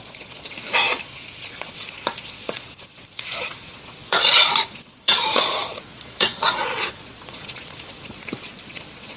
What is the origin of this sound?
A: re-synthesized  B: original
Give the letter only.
A